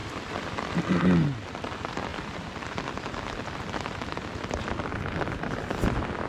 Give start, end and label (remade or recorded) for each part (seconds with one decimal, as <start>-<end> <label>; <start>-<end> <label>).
0.0-0.8 remade; 0.8-2.1 recorded; 2.1-4.6 remade; 4.6-6.3 recorded